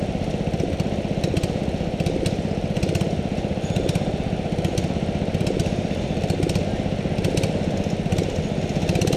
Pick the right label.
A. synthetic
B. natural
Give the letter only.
B